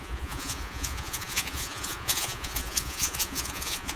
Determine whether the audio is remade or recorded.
remade